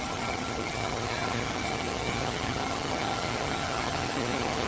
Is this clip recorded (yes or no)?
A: no